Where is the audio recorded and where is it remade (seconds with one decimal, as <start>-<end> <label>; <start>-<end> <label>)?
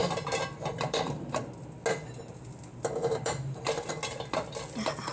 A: 0.0-1.4 remade; 1.4-2.7 recorded; 2.7-3.9 remade; 3.9-5.1 recorded